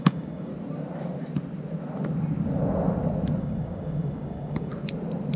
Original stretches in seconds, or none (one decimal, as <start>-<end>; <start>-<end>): 0.5-3.4; 4.7-5.4

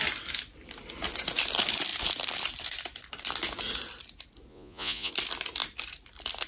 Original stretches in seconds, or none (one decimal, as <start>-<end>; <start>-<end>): 0.0-4.5; 5.1-6.5

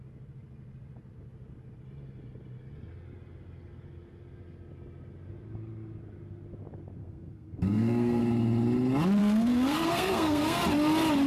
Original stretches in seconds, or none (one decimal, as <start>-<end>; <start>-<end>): 0.0-7.0; 8.2-9.2; 10.6-11.3

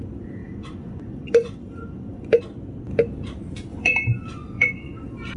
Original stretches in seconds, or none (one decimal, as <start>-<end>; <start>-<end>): 0.0-0.4; 2.4-3.7; 4.9-5.4